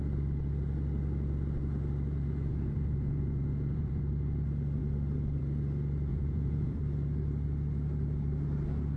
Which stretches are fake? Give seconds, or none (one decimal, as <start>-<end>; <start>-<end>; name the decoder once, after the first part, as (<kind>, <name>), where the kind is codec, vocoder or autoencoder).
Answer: 2.5-4.0 (vocoder, Vocos); 6.1-6.8